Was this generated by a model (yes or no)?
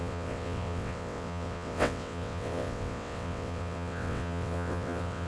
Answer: yes